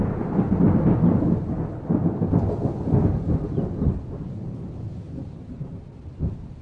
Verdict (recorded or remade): recorded